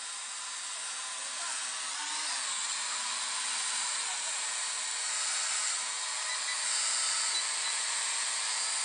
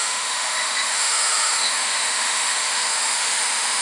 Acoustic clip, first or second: first